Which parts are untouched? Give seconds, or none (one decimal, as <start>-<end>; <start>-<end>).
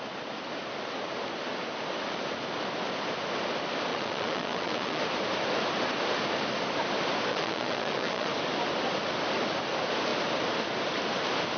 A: 0.0-3.9; 5.0-7.3; 8.3-11.6